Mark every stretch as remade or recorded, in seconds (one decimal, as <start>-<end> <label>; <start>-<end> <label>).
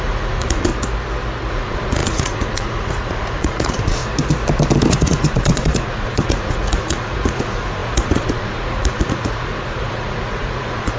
0.0-0.7 remade; 0.7-1.5 recorded; 1.5-4.0 remade; 4.0-4.9 recorded; 4.9-11.0 remade